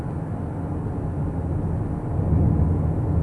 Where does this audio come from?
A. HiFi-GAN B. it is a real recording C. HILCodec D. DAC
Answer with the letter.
B